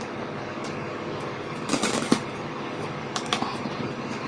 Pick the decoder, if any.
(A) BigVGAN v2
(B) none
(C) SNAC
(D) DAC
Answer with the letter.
D